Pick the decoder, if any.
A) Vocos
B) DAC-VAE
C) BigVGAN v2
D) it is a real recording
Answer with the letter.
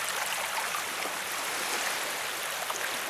D